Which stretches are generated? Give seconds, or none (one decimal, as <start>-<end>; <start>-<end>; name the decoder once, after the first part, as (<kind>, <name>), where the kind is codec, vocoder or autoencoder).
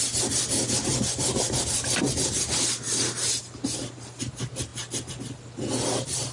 none